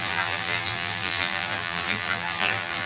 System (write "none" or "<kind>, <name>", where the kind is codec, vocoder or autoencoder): vocoder, BigVGAN v2